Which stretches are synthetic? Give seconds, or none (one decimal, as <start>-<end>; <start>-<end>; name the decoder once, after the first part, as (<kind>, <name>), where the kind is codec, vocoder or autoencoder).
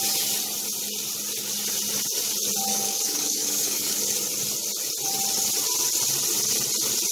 2.7-4.0 (codec, DAC)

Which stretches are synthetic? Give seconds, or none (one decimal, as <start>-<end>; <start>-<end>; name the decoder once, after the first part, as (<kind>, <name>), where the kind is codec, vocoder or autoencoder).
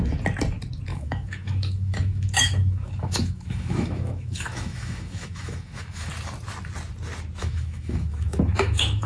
0.9-6.1 (autoencoder, DAC-VAE); 7.4-9.1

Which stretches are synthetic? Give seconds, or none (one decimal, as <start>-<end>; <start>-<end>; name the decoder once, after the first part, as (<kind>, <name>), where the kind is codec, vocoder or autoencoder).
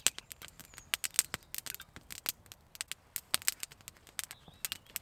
none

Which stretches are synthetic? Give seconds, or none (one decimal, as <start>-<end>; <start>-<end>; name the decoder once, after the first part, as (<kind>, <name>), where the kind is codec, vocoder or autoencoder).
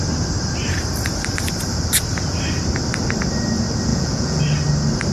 3.9-4.4 (vocoder, Vocos)